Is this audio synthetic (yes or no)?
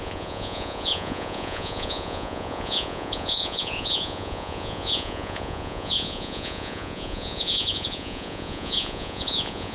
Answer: yes